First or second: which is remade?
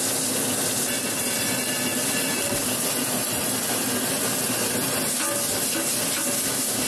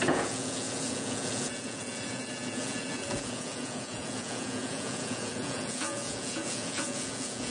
second